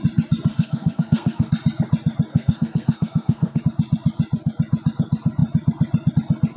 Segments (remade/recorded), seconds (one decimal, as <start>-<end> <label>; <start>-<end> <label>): 0.0-0.5 recorded; 0.5-1.5 remade; 1.5-2.3 recorded; 2.3-3.6 remade; 3.6-6.6 recorded